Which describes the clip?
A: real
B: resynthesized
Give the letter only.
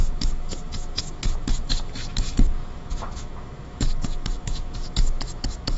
B